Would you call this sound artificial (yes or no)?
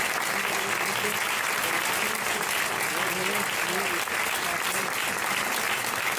no